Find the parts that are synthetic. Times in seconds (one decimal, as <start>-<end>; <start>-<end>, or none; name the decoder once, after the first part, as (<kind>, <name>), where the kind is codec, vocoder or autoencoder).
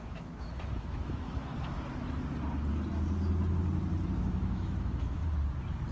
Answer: 0.0-1.5 (autoencoder, DAC-VAE); 4.2-5.2